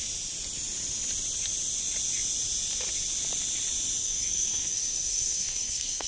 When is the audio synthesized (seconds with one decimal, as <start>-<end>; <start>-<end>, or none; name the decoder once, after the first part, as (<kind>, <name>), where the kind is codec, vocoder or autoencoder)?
4.0-6.1 (codec, SNAC)